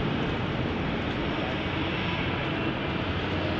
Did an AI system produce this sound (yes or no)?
no